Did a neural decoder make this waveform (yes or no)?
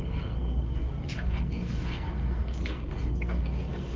yes